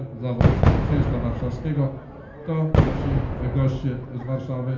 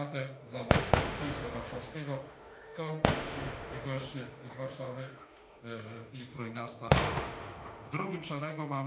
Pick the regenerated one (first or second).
second